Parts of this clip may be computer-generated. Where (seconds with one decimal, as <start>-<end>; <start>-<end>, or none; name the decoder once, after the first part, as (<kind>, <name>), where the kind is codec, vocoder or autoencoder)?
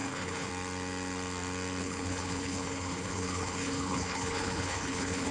0.0-0.5 (codec, HILCodec); 1.8-5.3